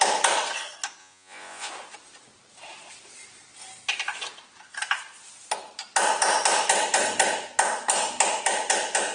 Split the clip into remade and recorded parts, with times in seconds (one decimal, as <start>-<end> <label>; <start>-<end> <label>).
0.0-1.0 recorded; 1.0-1.7 remade; 1.7-9.1 recorded